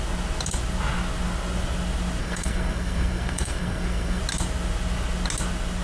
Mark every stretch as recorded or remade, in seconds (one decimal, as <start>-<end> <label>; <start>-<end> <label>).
0.0-2.2 recorded; 2.2-4.2 remade; 4.2-5.8 recorded